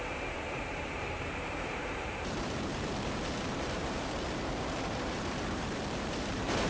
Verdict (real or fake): fake